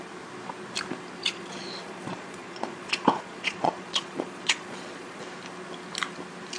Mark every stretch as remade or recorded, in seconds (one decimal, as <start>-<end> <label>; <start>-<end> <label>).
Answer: 0.0-1.2 recorded; 1.2-5.2 remade; 5.2-6.6 recorded